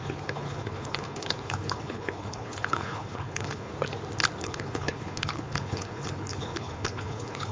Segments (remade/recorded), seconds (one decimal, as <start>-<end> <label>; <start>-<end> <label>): 0.0-3.7 remade; 3.7-4.4 recorded; 4.4-7.5 remade